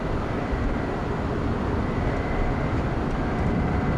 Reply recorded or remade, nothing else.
remade